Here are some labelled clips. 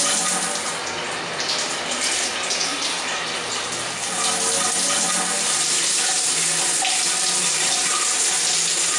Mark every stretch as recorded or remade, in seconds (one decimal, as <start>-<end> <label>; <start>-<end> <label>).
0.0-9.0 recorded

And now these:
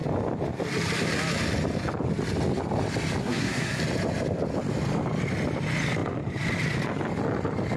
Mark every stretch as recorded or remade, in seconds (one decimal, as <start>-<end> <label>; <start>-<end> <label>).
0.0-3.2 recorded; 3.2-3.8 remade; 3.8-7.8 recorded

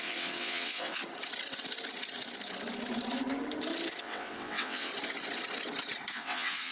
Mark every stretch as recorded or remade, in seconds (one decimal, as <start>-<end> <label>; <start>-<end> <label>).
0.0-1.0 remade; 1.0-4.0 recorded; 4.0-4.9 remade; 4.9-6.1 recorded; 6.1-6.7 remade

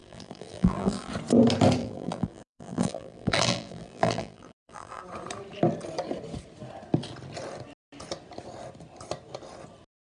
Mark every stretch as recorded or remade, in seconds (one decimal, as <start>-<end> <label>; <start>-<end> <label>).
0.0-1.1 remade; 1.1-1.8 recorded; 1.8-5.0 remade; 5.0-10.0 recorded

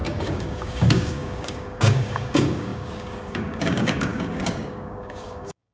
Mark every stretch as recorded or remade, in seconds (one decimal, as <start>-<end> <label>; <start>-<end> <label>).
0.0-5.7 remade

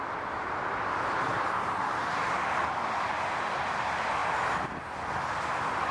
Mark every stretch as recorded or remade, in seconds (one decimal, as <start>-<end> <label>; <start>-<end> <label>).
0.0-5.9 recorded